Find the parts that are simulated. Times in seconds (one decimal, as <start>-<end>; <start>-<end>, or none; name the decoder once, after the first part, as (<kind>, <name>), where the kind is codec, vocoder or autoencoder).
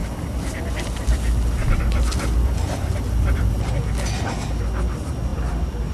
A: 0.0-3.5 (vocoder, BigVGAN v2); 5.3-5.9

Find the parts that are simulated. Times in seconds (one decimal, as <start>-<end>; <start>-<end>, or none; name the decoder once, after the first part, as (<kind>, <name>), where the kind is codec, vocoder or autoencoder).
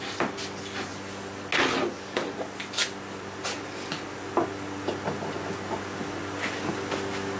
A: none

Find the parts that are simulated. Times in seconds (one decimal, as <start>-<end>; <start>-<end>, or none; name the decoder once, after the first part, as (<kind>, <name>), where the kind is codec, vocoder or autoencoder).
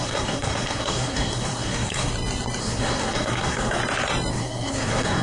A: 0.0-2.1 (codec, SNAC); 2.6-3.8; 4.3-5.2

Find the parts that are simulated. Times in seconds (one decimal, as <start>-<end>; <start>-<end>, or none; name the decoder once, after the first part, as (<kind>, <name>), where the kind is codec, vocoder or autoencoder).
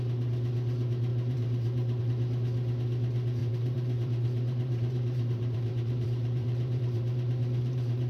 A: 1.1-2.0 (vocoder, BigVGAN v2); 3.4-8.1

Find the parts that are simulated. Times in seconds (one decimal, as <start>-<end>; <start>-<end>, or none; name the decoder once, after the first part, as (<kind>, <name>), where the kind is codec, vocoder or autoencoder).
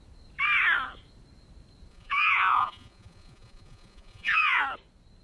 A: 1.9-4.6 (vocoder, Vocos)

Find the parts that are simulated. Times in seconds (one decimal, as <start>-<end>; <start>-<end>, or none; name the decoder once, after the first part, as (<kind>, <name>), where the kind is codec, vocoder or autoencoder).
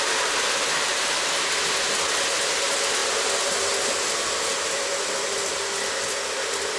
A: none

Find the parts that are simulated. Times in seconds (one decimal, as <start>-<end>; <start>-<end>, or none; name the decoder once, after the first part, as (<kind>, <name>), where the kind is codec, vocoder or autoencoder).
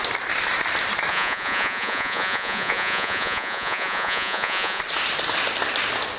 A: 1.1-4.8 (vocoder, Vocos)